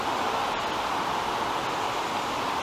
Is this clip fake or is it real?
real